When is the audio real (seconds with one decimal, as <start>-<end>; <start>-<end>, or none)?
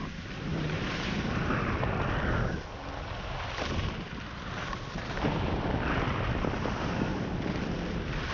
0.0-0.5; 1.6-8.3